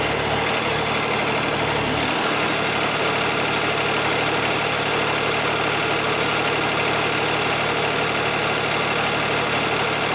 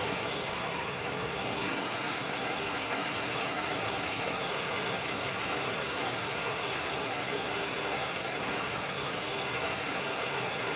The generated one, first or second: second